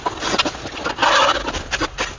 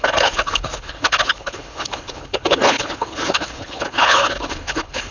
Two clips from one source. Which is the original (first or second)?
first